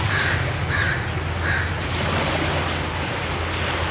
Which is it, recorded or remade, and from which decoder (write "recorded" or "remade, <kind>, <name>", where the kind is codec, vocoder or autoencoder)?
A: recorded